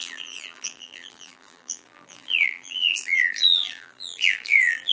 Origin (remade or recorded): remade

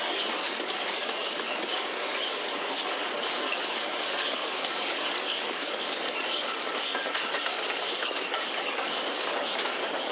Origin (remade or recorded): remade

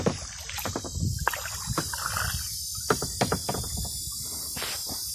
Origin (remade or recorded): recorded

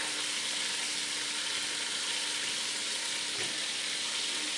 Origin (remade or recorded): recorded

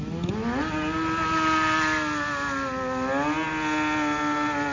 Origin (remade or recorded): recorded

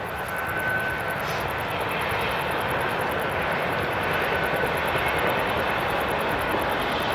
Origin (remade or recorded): recorded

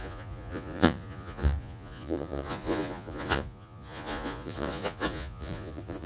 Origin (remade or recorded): remade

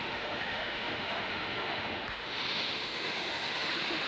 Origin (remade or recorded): remade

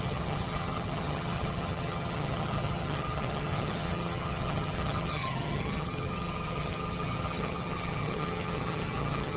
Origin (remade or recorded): remade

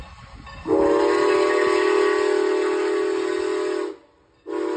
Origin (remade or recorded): recorded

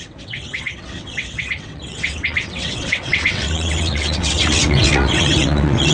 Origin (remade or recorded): remade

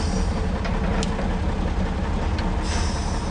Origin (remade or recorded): recorded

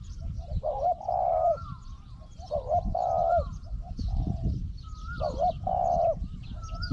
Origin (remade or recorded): remade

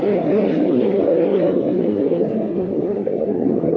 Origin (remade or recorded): remade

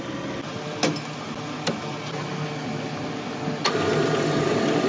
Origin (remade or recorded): recorded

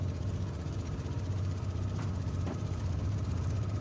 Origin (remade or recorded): remade